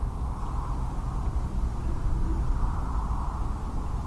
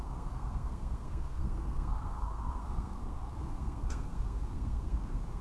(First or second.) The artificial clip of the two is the second